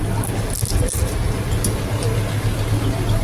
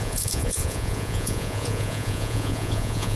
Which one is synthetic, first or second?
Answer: second